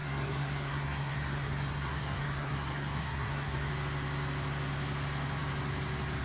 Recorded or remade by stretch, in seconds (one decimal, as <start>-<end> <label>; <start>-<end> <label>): 0.0-3.7 remade; 3.7-6.2 recorded